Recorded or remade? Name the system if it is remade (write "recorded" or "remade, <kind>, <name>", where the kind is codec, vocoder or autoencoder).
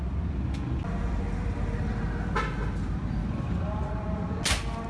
recorded